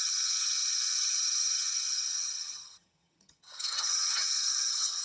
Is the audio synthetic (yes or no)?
yes